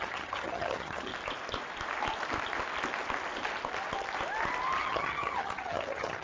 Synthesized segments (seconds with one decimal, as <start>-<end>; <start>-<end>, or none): 0.0-1.1; 4.8-6.2